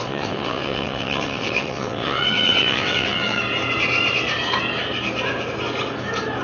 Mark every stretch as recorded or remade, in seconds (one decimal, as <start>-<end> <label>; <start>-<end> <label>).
0.0-3.4 remade; 3.4-6.4 recorded